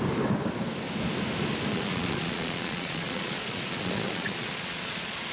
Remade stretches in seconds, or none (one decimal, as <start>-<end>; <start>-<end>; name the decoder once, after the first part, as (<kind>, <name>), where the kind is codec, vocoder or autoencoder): 1.7-5.3 (vocoder, Vocos)